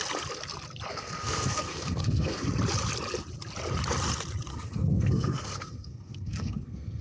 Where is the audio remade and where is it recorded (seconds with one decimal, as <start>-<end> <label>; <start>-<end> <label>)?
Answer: 0.0-0.9 recorded; 0.9-2.5 remade; 2.5-4.5 recorded; 4.5-7.0 remade